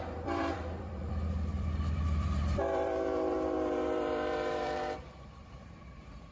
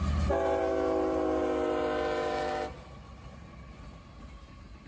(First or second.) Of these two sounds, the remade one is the first